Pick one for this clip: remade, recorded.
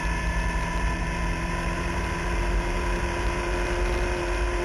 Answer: remade